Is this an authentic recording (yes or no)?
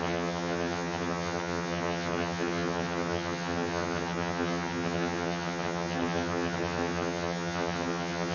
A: no